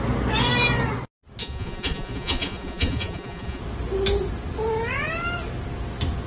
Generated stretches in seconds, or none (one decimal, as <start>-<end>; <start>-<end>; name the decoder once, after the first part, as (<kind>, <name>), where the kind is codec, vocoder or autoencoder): 1.4-3.6 (vocoder, Vocos)